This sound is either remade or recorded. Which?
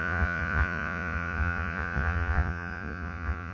remade